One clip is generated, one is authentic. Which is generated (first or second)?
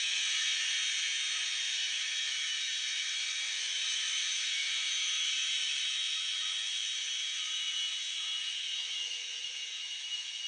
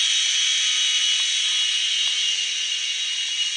first